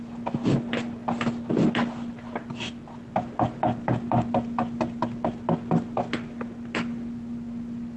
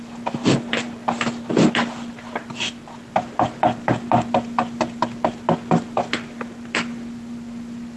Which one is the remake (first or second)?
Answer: second